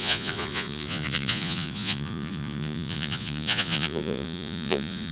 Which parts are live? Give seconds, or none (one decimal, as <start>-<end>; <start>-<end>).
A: none

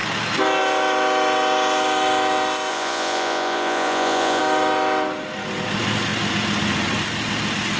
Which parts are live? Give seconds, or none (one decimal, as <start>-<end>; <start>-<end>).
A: 0.0-2.7; 4.4-7.8

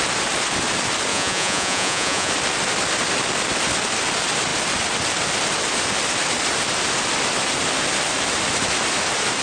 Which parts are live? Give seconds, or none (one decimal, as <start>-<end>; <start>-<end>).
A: 0.0-1.1; 2.3-9.4

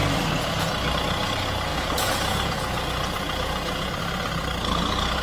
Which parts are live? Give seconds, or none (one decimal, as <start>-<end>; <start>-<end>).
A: 0.0-1.7; 4.0-5.2

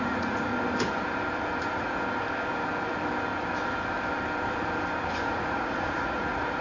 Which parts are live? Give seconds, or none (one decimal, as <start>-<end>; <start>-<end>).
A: 0.5-1.6; 2.0-5.1

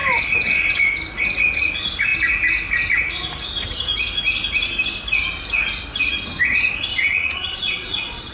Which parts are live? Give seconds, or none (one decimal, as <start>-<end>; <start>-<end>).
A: 0.0-6.9